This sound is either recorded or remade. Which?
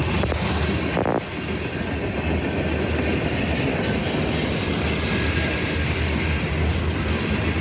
recorded